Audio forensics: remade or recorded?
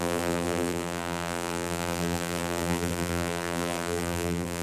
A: remade